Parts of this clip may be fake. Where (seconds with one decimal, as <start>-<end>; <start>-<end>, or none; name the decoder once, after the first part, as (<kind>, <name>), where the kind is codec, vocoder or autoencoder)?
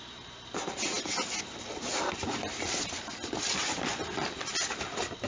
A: none